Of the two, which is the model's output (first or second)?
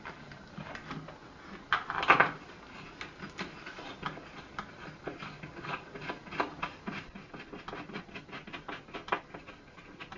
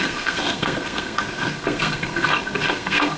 second